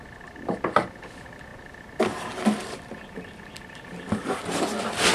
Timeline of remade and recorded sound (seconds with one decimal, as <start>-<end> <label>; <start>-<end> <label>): 0.0-5.1 recorded